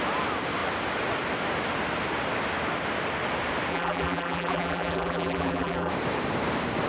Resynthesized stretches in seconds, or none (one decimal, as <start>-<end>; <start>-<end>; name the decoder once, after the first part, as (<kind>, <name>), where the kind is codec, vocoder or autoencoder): 3.7-5.9 (vocoder, BigVGAN v2)